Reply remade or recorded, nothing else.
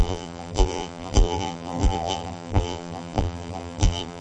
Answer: remade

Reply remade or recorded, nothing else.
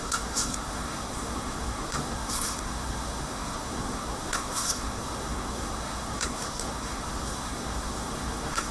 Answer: remade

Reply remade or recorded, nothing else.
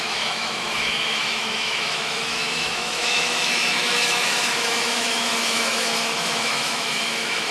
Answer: remade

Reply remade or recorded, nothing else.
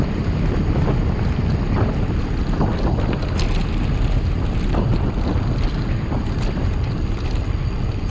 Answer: recorded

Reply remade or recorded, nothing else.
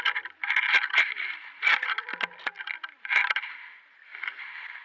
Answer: recorded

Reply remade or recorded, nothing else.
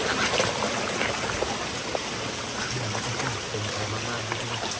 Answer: recorded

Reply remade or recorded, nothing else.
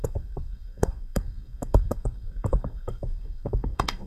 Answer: remade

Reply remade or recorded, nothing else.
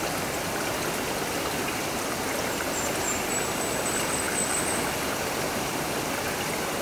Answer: recorded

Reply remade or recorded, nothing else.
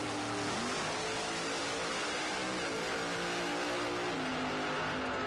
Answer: recorded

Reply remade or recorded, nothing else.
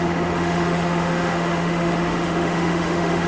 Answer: remade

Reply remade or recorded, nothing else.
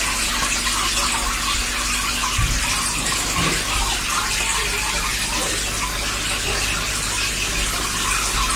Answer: recorded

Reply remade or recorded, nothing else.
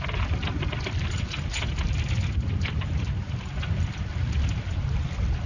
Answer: recorded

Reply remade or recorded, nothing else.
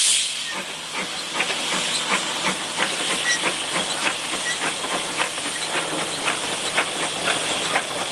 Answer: recorded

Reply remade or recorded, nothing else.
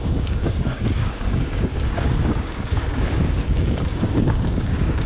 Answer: remade